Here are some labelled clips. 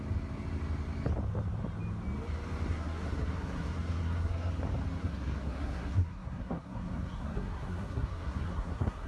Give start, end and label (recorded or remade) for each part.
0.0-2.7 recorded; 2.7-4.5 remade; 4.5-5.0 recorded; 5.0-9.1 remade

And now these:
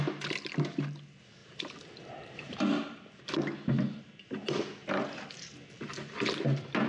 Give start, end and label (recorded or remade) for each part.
0.0-1.4 recorded; 1.4-3.2 remade; 3.2-6.9 recorded

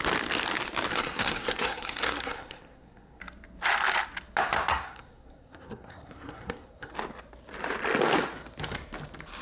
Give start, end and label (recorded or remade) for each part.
0.0-0.9 recorded; 0.9-3.2 remade; 3.2-4.7 recorded; 4.7-6.9 remade; 6.9-9.4 recorded

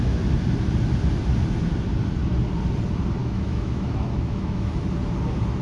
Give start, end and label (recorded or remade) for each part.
0.0-3.2 recorded; 3.2-4.8 remade; 4.8-5.6 recorded